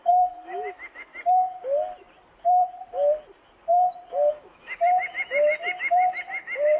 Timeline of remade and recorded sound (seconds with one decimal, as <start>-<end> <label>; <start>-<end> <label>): 0.0-1.1 remade; 1.1-4.3 recorded; 4.3-6.8 remade